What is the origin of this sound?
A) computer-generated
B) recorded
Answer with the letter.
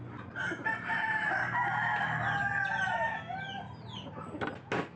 B